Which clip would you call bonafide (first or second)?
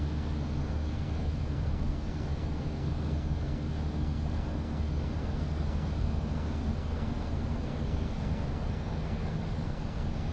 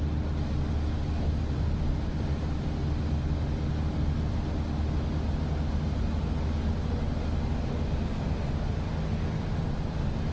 second